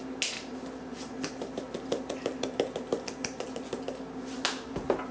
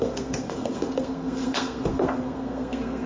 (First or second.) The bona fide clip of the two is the first